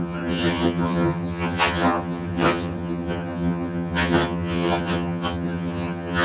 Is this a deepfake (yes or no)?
yes